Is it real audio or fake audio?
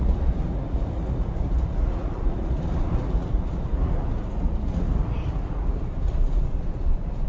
fake